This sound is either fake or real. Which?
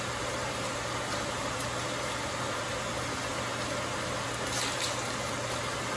real